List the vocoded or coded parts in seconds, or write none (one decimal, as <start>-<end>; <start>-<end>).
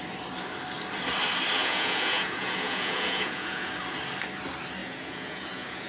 1.6-3.7; 4.8-5.9